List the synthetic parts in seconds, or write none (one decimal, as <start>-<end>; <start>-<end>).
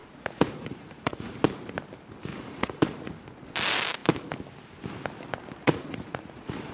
0.0-1.3; 2.3-3.1; 5.6-6.7